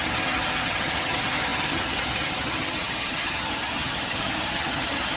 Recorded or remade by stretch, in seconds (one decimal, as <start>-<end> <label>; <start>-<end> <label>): 0.0-5.2 remade